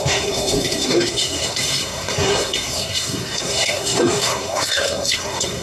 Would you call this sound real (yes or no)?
no